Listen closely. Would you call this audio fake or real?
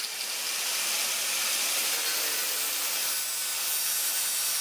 real